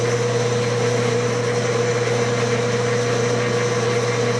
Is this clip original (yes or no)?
yes